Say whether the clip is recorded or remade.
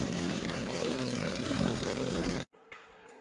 remade